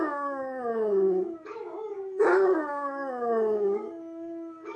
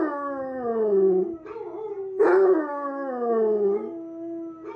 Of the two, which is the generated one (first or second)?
first